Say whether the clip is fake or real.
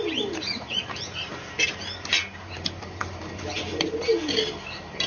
real